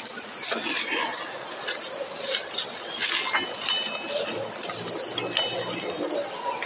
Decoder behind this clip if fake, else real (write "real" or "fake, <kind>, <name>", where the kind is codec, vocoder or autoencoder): real